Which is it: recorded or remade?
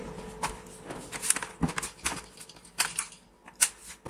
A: recorded